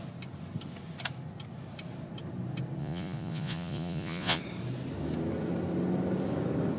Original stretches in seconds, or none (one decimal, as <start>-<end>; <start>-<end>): 0.0-2.8; 4.4-6.8